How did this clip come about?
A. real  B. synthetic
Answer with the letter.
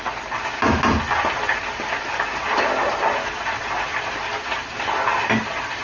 A